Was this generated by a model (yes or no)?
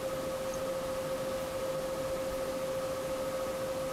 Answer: no